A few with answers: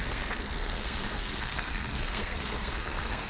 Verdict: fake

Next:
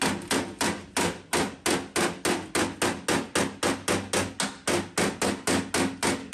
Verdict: real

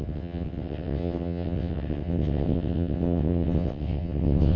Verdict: fake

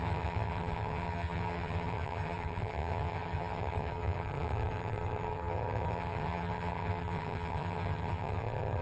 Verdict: fake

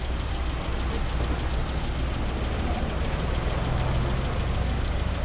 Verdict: real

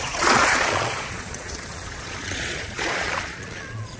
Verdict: fake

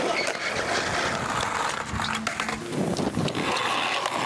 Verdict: real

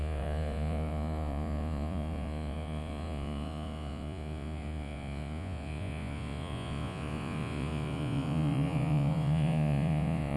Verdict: fake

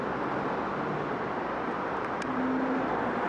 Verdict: real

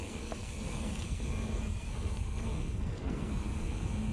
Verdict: fake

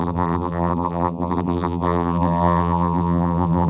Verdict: fake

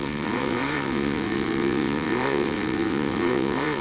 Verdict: fake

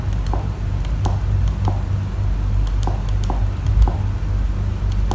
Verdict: real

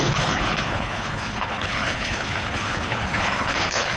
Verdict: fake